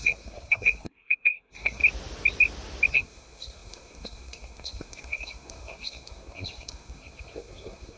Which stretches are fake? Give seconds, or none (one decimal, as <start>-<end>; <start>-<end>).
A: 0.0-1.8; 2.9-8.0